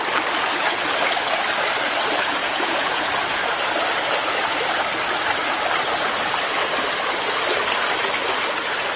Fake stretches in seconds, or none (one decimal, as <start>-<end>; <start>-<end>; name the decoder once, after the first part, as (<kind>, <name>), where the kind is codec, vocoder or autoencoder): 2.4-3.1 (vocoder, Vocos)